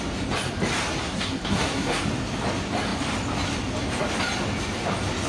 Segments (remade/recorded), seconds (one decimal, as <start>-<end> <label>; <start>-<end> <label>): 0.0-1.0 recorded; 1.0-2.0 remade; 2.0-5.3 recorded